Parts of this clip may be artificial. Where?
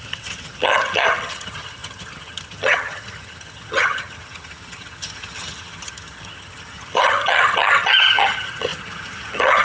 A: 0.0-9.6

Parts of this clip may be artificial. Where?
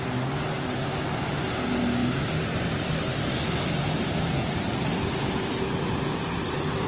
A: none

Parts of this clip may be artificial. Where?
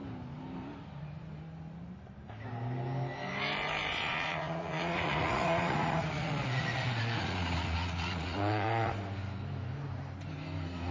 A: 3.9-8.9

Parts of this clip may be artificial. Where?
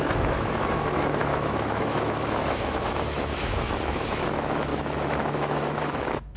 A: 0.0-6.4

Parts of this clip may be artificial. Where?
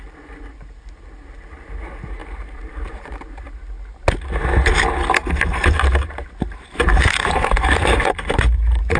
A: 2.2-3.2; 5.5-9.0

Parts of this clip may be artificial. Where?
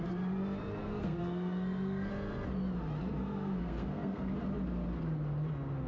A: 0.8-2.1; 3.2-4.2